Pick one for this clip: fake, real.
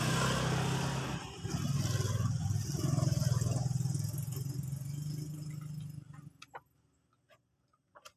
real